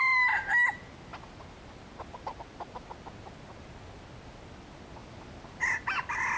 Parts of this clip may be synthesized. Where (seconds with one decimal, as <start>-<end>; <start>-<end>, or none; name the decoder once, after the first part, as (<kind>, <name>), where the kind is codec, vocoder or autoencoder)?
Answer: none